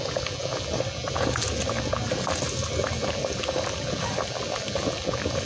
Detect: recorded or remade recorded